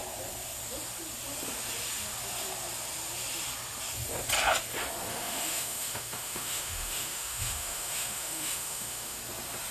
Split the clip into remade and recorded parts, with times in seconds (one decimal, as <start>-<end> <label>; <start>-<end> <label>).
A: 0.0-5.1 recorded; 5.1-9.2 remade; 9.2-9.7 recorded